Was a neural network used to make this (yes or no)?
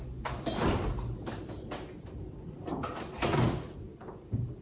no